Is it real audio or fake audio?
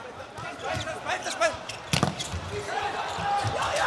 real